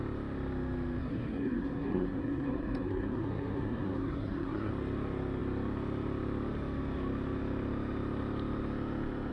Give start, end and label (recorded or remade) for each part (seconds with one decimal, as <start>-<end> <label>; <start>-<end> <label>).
0.0-1.0 recorded; 1.0-4.7 remade; 4.7-9.3 recorded